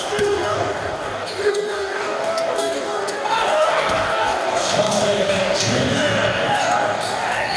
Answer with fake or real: fake